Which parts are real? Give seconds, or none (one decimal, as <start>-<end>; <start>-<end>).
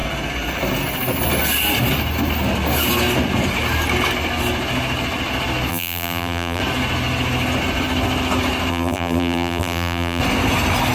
0.0-5.7; 6.6-8.7; 10.2-10.9